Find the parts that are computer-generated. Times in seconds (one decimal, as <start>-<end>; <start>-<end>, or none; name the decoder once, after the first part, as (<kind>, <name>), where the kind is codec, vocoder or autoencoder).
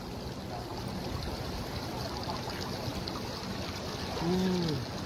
0.7-1.9 (vocoder, BigVGAN v2); 2.9-3.8